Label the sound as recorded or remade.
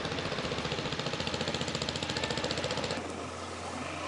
recorded